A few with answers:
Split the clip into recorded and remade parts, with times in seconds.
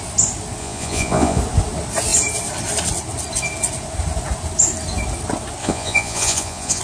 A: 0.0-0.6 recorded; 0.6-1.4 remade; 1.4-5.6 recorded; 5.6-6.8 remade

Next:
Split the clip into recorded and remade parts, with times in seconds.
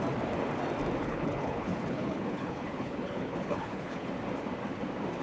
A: 0.0-1.0 recorded; 1.0-4.1 remade; 4.1-5.2 recorded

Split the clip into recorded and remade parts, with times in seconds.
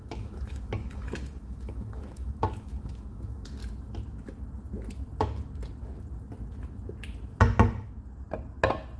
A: 0.0-3.6 remade; 3.6-9.0 recorded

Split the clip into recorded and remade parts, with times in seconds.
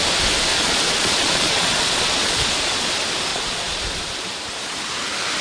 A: 0.0-0.5 recorded; 0.5-2.9 remade; 2.9-3.3 recorded; 3.3-3.9 remade; 3.9-5.4 recorded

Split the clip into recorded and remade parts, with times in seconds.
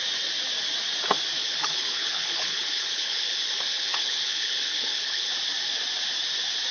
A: 0.0-1.4 recorded; 1.4-5.3 remade; 5.3-6.7 recorded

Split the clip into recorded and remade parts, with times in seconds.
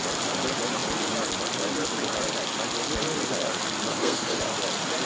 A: 0.0-3.9 recorded; 3.9-4.4 remade; 4.4-5.1 recorded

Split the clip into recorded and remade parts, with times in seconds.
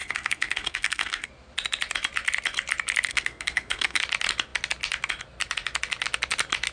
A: 0.0-1.3 remade; 1.3-3.1 recorded; 3.1-4.0 remade; 4.0-6.7 recorded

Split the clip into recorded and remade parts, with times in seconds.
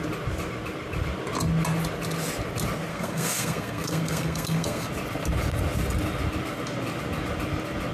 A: 0.0-2.9 recorded; 2.9-4.9 remade; 4.9-7.9 recorded